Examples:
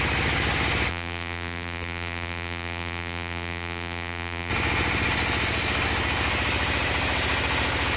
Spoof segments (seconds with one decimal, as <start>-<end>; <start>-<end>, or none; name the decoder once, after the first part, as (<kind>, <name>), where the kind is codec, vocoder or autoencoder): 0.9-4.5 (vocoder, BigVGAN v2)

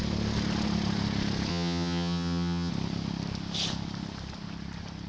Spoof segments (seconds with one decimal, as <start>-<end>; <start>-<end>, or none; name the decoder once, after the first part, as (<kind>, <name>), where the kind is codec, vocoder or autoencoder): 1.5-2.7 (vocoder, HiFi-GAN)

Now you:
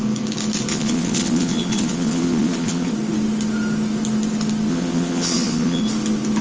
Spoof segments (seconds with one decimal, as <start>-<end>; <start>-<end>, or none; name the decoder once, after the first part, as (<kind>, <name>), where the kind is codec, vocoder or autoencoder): 0.7-2.9 (vocoder, Vocos); 4.7-5.8

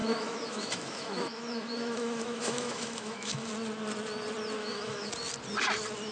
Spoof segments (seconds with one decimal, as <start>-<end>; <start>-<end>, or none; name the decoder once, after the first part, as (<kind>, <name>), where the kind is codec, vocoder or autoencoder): 0.0-3.5 (autoencoder, DAC-VAE); 4.6-5.1

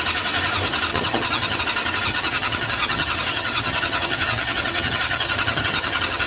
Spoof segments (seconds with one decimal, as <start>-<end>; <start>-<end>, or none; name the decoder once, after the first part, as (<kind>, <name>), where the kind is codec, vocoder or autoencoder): 0.9-1.6 (vocoder, HiFi-GAN); 2.1-6.3

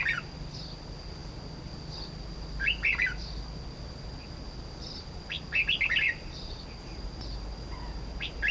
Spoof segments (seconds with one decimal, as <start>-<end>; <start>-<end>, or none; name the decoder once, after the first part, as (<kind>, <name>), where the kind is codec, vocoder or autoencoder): none

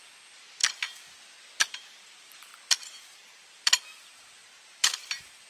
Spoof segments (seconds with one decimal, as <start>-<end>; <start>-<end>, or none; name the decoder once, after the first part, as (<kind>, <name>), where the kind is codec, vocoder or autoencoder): 0.0-0.6 (vocoder, BigVGAN v2); 1.7-2.5; 3.1-5.5

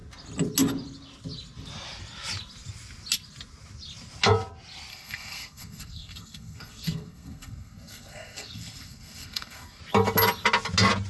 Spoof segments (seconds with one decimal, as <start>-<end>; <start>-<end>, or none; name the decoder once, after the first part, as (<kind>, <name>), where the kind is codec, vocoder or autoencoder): 4.9-9.8 (codec, SNAC)